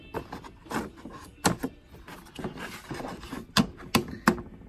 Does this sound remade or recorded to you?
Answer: recorded